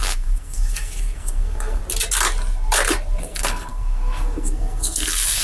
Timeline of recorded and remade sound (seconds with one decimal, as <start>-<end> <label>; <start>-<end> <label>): 0.0-1.8 remade; 1.8-3.2 recorded; 3.2-5.4 remade